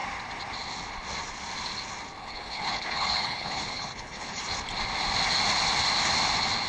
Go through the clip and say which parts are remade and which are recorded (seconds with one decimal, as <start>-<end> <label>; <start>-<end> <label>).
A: 0.0-2.2 recorded; 2.2-4.4 remade; 4.4-6.7 recorded